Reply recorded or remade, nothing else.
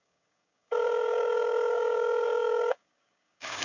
remade